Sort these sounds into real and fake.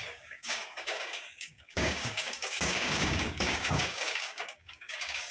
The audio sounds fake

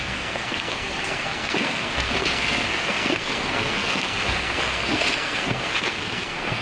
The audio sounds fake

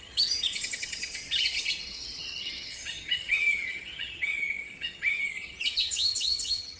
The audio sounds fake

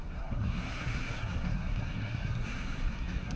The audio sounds fake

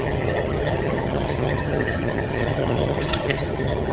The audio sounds fake